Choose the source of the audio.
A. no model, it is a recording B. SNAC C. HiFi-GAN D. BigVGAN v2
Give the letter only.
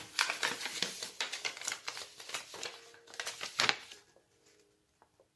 D